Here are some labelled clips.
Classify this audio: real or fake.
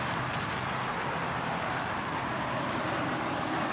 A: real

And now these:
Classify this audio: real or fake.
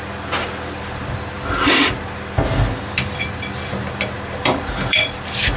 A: fake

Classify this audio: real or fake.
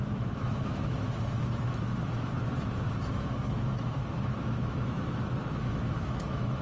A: fake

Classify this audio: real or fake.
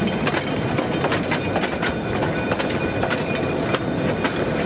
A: real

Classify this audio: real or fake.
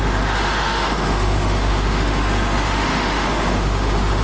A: fake